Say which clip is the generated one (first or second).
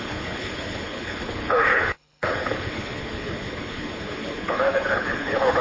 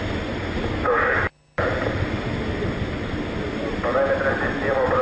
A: first